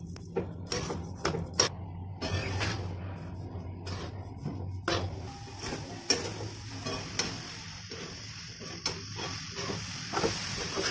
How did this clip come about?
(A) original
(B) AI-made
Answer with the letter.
A